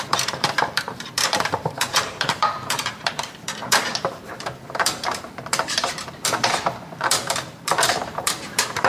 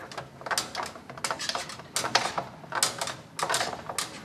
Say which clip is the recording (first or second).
second